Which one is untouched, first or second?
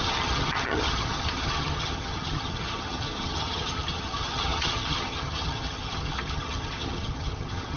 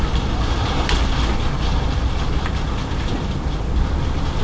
second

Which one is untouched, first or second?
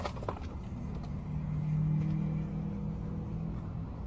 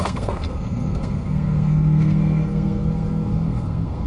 first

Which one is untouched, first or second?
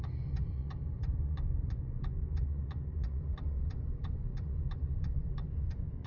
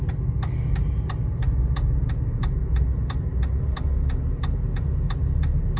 second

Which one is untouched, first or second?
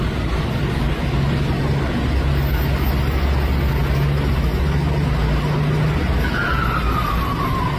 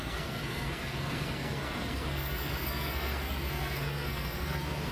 first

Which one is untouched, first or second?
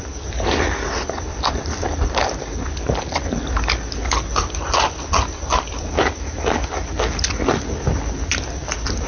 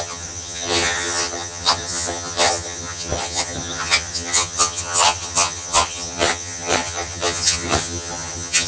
first